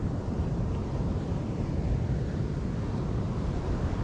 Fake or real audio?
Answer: fake